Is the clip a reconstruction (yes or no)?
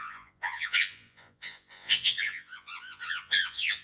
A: yes